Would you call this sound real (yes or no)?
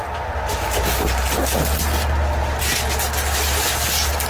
yes